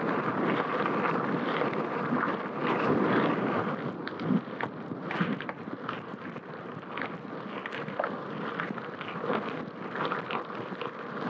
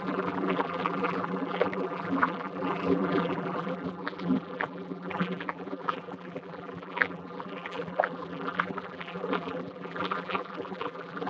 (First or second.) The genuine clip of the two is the first